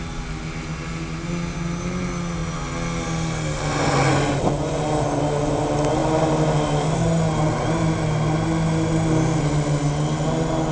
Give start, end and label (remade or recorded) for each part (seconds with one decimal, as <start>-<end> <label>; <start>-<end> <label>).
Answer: 0.0-10.7 recorded